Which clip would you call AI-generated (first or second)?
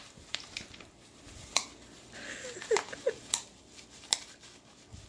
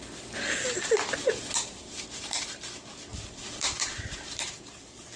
second